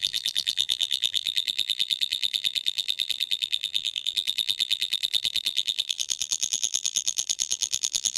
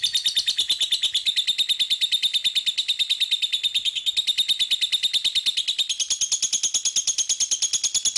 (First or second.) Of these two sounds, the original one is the second